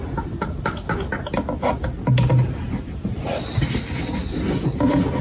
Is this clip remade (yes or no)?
no